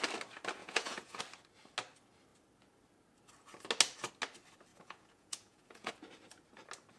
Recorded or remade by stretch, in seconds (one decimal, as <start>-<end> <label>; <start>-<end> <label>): 0.0-0.6 recorded; 0.6-1.2 remade; 1.2-4.7 recorded; 4.7-5.9 remade; 5.9-7.0 recorded